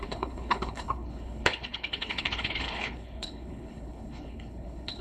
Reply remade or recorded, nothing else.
remade